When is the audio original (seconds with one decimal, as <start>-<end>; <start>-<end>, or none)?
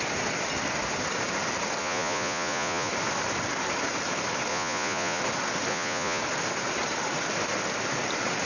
0.0-1.8; 2.9-4.5; 5.2-5.7; 6.2-8.4